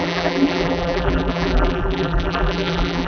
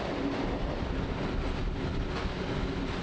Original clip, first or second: second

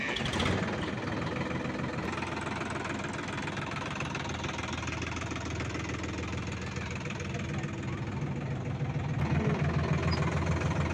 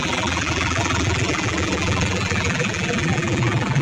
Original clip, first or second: first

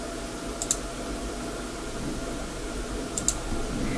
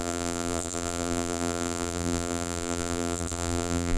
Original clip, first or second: first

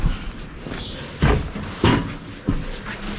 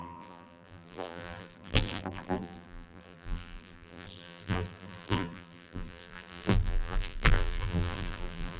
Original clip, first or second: first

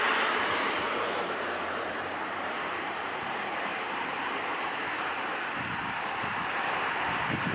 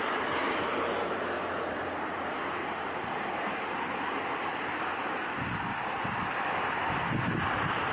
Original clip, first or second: second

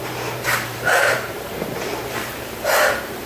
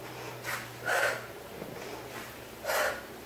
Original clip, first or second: second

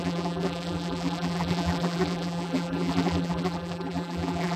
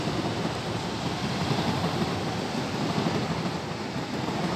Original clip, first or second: second